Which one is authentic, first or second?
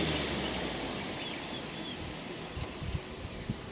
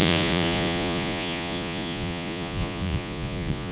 first